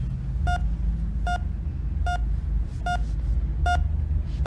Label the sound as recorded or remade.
recorded